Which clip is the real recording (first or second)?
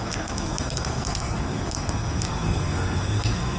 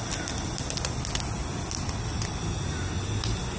second